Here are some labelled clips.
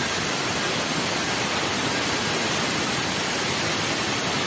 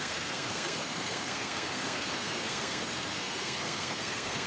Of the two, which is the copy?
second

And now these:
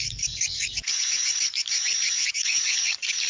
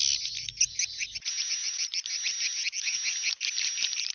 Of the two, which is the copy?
first